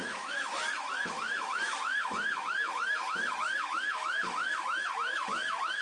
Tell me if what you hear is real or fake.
fake